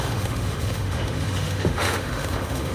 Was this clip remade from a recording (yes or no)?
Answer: yes